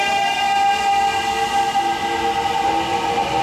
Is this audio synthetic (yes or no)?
no